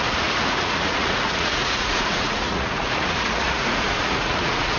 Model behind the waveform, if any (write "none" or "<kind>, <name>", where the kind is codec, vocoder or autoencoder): vocoder, Vocos